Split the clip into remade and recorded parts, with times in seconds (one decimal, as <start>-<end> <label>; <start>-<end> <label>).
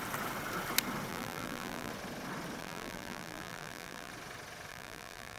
0.0-1.1 recorded; 1.1-1.9 remade; 1.9-2.6 recorded; 2.6-4.1 remade; 4.1-4.7 recorded; 4.7-5.4 remade